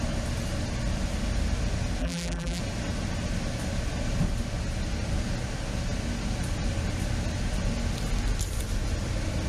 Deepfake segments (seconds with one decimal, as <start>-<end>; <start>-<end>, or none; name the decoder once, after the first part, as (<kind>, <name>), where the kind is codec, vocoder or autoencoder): 2.0-2.6 (vocoder, BigVGAN v2)